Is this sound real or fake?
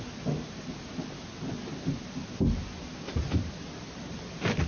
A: real